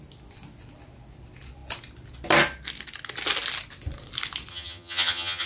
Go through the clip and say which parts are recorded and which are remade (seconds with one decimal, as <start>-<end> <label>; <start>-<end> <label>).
0.0-4.5 recorded; 4.5-5.5 remade